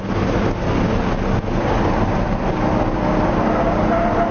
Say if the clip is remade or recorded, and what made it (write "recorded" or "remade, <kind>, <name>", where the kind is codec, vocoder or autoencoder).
recorded